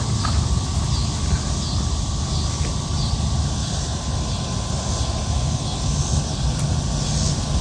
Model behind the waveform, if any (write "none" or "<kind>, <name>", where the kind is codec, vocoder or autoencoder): none